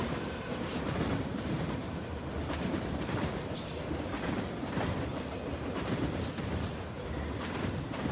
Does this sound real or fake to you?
fake